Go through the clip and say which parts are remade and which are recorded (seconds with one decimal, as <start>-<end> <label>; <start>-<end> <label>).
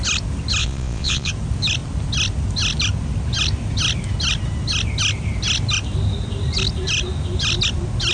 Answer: 0.0-0.6 recorded; 0.6-1.3 remade; 1.3-8.1 recorded